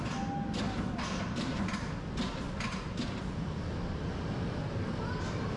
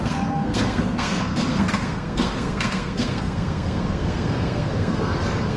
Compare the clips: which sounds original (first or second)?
first